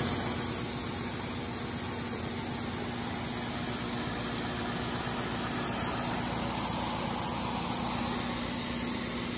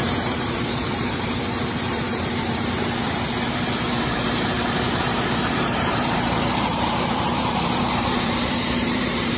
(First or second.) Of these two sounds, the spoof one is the second